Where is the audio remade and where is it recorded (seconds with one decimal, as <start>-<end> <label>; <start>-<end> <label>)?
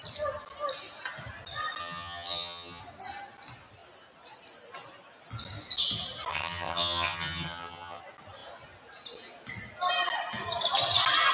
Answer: 0.0-1.8 recorded; 1.8-2.8 remade; 2.8-6.3 recorded; 6.3-8.0 remade; 8.0-11.3 recorded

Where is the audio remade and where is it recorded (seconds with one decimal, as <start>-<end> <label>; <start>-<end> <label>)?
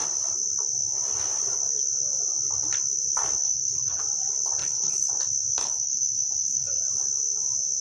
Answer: 0.0-3.4 recorded; 3.4-4.0 remade; 4.0-4.6 recorded; 4.6-5.1 remade; 5.1-5.6 recorded; 5.6-6.8 remade; 6.8-7.8 recorded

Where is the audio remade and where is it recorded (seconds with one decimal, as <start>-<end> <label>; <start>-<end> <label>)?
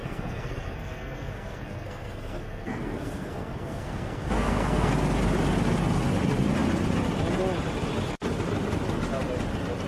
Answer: 0.0-4.9 remade; 4.9-9.9 recorded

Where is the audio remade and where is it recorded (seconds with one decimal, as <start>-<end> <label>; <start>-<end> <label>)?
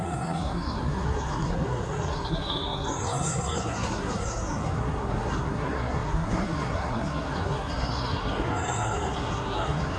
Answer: 0.0-10.0 remade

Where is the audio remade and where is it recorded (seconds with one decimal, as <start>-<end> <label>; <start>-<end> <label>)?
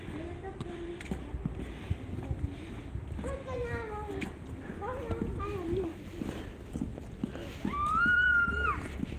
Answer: 0.0-9.2 recorded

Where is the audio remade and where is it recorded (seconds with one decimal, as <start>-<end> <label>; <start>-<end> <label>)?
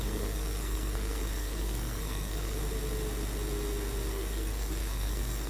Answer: 0.0-2.6 remade; 2.6-4.1 recorded; 4.1-5.5 remade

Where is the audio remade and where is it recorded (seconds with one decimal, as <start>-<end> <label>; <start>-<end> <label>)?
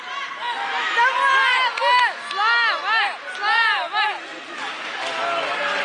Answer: 0.0-5.8 recorded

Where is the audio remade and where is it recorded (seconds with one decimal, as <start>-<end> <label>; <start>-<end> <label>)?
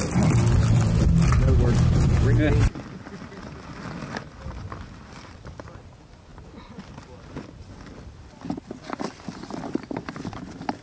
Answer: 0.0-10.8 recorded